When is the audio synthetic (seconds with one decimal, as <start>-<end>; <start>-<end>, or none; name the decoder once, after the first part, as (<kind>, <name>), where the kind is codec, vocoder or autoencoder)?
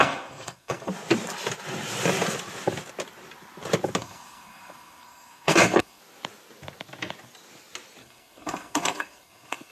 0.0-0.9 (codec, SNAC); 4.0-6.0; 8.0-9.7